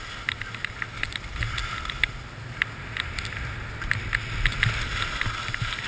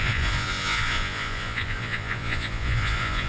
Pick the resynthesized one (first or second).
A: second